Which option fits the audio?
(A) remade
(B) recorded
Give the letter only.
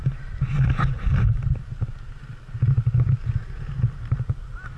B